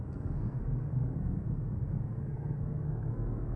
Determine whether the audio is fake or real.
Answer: fake